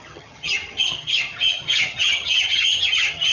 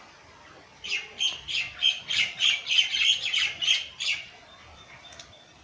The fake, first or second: first